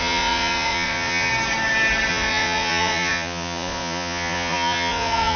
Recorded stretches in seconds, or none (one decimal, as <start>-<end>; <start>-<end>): 1.3-2.1